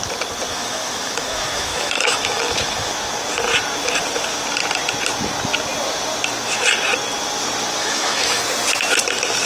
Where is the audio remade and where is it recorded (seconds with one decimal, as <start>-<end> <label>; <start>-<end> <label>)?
0.0-0.5 recorded; 0.5-2.9 remade; 2.9-7.8 recorded; 7.8-8.4 remade; 8.4-9.5 recorded